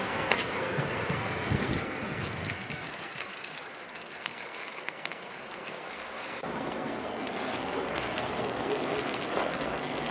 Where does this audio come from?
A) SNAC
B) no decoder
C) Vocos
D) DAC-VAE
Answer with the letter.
A